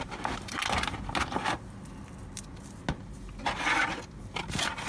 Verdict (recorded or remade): recorded